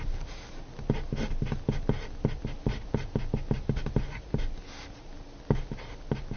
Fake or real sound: real